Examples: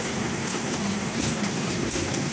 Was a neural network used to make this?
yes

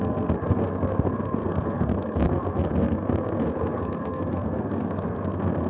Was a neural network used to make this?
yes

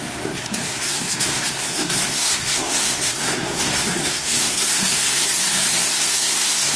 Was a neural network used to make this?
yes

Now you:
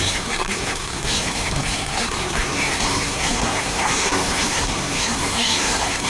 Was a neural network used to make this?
yes